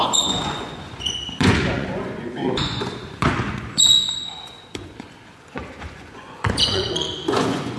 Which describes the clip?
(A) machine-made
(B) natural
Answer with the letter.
A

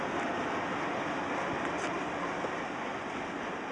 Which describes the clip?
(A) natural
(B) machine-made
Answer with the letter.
A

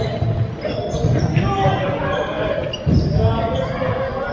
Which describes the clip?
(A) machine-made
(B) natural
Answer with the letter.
B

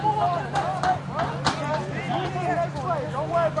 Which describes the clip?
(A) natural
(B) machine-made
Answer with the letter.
A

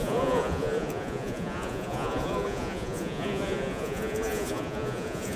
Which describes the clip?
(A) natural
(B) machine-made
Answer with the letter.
B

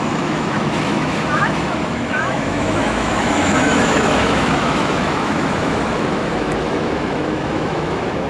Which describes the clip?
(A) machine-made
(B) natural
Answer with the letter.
A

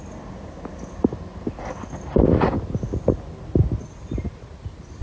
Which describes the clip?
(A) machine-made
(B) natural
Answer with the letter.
B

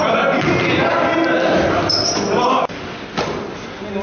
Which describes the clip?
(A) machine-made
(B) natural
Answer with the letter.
B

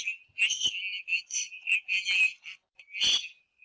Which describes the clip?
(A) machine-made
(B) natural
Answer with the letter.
B